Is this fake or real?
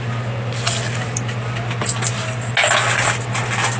real